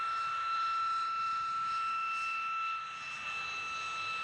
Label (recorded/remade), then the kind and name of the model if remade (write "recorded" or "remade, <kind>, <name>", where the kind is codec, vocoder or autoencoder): recorded